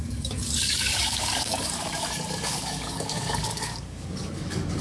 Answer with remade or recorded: remade